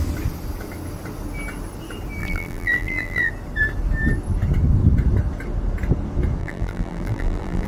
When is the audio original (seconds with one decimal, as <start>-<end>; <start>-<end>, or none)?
0.0-2.2; 3.3-6.4